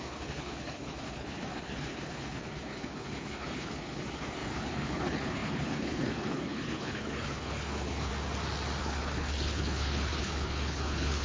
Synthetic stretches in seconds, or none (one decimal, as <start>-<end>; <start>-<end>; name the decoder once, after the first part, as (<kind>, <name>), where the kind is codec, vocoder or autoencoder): 0.0-8.1 (codec, HILCodec); 8.8-11.2